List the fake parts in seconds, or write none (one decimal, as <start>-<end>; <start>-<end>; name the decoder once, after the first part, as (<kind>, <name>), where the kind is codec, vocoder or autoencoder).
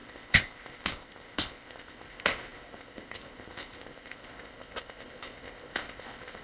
0.0-6.4 (codec, ZipCodec)